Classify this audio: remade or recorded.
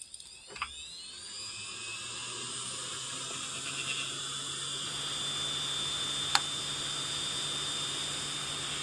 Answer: recorded